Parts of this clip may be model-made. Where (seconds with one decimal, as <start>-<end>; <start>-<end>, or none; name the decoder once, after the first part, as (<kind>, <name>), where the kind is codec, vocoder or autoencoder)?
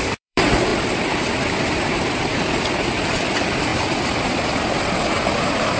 0.0-3.7 (vocoder, BigVGAN v2); 4.8-5.8